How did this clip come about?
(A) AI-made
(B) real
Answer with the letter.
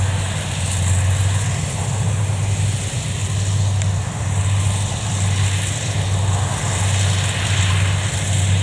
B